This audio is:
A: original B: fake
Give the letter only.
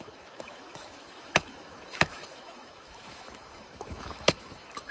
B